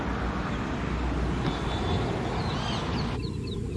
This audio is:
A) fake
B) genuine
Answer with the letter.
B